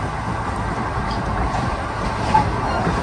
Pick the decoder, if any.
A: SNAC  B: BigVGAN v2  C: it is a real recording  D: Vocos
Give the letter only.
C